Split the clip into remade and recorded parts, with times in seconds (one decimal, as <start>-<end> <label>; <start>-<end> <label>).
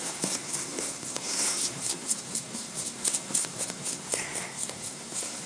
0.0-5.5 remade